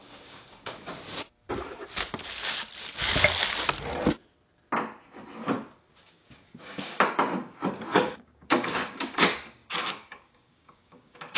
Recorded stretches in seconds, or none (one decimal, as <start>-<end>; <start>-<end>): 0.9-5.9